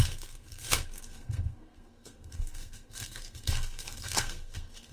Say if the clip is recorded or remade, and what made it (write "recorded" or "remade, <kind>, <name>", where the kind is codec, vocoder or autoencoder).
remade, codec, SNAC